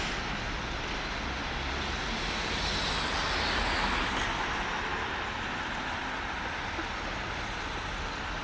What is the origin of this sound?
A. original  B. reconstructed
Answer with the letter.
A